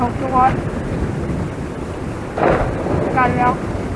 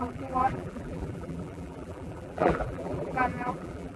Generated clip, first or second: second